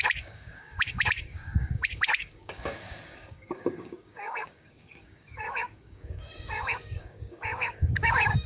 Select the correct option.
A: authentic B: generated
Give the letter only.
B